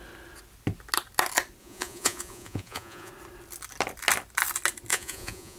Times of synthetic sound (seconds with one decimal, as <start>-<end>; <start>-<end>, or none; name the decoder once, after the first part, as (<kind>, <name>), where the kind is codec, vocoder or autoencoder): 1.6-3.1 (vocoder, Vocos); 4.9-5.6